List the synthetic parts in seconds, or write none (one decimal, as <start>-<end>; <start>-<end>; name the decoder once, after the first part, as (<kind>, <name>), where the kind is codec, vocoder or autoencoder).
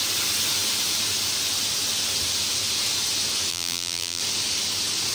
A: 3.5-4.2 (vocoder, BigVGAN v2)